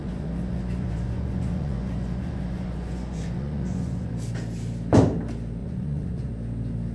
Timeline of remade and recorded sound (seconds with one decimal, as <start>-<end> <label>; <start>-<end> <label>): 0.0-4.1 remade; 4.1-5.6 recorded; 5.6-6.3 remade; 6.3-6.9 recorded